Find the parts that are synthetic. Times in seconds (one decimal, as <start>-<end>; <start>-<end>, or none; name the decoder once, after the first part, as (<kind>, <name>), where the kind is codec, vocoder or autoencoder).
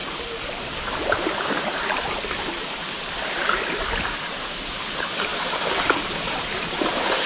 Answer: 0.0-2.6 (vocoder, BigVGAN v2); 5.3-7.3